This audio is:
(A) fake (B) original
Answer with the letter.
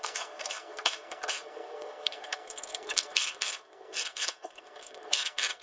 A